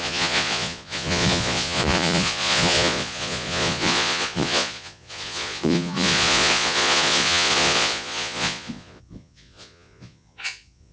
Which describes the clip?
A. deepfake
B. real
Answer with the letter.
A